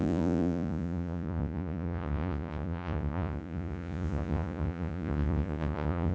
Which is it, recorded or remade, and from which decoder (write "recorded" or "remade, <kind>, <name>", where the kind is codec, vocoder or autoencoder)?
remade, vocoder, Vocos